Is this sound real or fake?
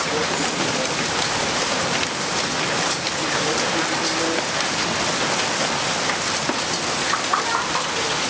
real